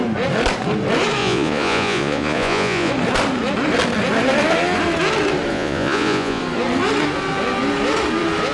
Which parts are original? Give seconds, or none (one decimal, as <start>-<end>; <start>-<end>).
0.0-1.2; 2.9-5.5; 6.4-8.5